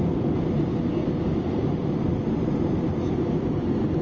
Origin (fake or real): real